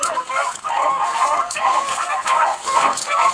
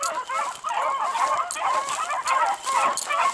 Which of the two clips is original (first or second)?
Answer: second